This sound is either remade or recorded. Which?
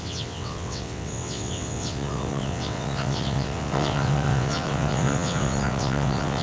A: remade